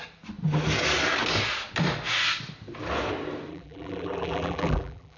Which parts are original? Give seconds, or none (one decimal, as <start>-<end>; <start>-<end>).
0.0-3.5